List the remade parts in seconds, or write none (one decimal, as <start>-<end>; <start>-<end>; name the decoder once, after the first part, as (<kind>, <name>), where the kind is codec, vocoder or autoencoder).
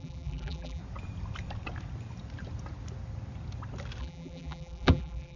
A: 0.0-0.8 (vocoder, BigVGAN v2); 4.0-5.4